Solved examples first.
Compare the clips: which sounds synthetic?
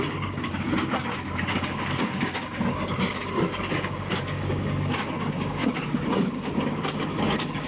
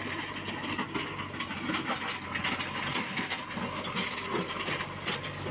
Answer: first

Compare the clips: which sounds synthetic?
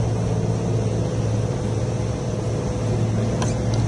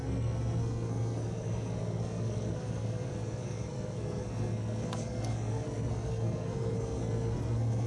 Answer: second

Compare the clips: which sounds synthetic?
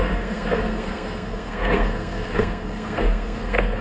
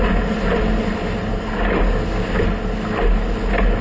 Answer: first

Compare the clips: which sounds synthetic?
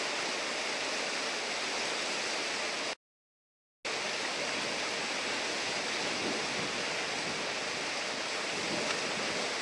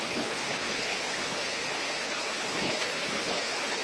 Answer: second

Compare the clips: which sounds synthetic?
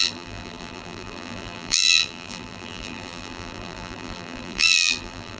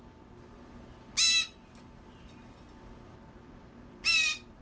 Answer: first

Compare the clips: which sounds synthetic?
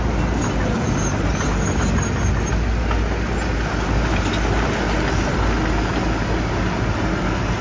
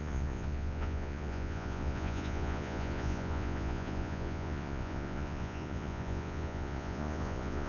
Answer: second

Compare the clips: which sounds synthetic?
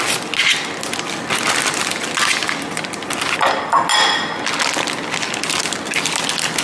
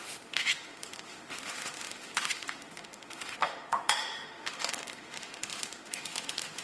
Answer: second